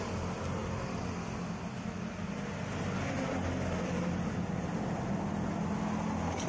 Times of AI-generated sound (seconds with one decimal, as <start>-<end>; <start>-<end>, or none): none